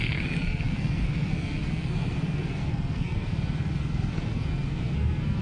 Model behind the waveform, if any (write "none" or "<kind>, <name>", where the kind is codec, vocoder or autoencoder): codec, SNAC